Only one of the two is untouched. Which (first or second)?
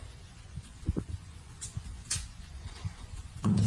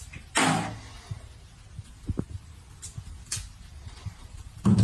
second